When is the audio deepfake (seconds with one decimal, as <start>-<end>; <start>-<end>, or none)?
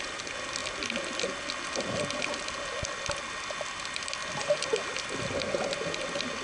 none